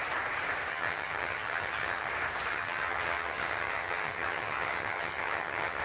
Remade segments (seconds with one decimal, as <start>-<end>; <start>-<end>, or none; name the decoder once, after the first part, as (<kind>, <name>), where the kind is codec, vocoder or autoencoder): 0.7-2.1 (vocoder, HiFi-GAN); 2.5-5.8